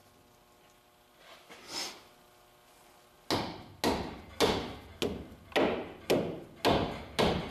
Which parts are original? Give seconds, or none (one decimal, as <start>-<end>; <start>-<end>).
0.0-7.5